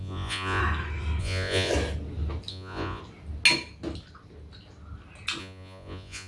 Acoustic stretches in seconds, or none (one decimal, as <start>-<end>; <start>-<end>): 0.6-1.2; 1.7-2.5; 3.0-5.4